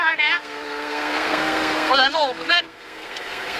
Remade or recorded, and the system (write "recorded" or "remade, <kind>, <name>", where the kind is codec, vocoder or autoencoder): remade, codec, SNAC